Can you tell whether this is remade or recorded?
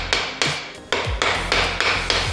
recorded